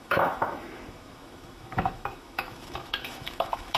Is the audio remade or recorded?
remade